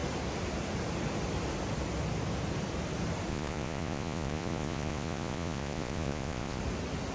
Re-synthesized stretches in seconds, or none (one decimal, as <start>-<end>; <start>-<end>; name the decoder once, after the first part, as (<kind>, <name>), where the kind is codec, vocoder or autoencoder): 3.3-6.6 (vocoder, Vocos)